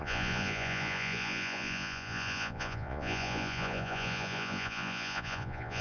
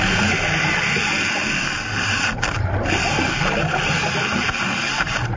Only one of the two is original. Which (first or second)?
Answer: second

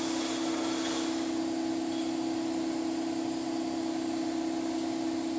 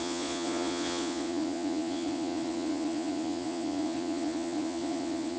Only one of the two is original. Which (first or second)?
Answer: first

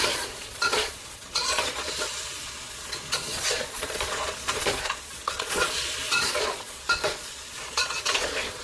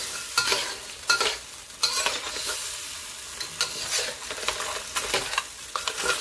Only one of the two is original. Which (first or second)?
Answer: second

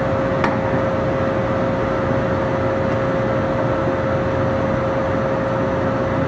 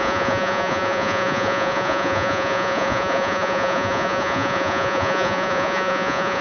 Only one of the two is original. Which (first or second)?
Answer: first